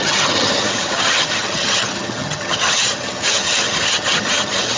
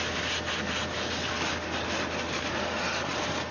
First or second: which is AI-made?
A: first